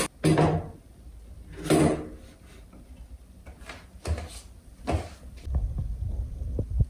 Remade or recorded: recorded